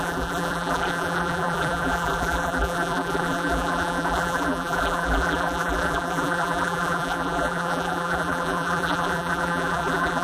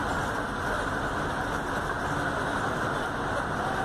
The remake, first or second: first